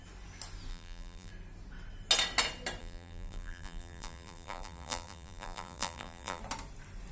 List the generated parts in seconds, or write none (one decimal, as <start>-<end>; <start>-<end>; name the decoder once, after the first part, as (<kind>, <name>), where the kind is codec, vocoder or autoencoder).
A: 0.7-1.3 (vocoder, BigVGAN v2); 2.8-6.4